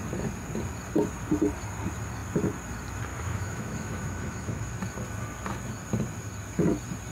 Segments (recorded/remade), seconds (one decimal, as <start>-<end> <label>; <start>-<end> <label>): 0.0-3.1 recorded; 3.1-4.7 remade; 4.7-7.1 recorded